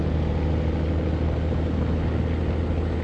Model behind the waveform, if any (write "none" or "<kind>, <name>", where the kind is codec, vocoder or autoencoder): none